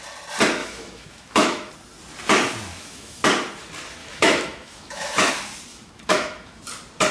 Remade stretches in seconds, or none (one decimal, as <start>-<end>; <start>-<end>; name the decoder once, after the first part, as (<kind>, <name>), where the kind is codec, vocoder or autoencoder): 0.6-1.7 (autoencoder, DAC-VAE); 2.7-3.2; 4.0-5.3; 5.7-6.6